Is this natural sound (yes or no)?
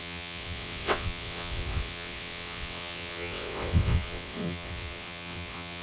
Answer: no